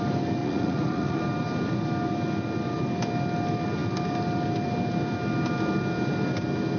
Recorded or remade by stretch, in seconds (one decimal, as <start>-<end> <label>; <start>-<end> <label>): 0.0-0.4 recorded; 0.4-1.2 remade; 1.2-6.8 recorded